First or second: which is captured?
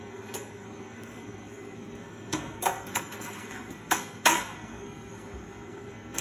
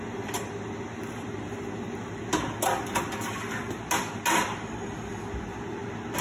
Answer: second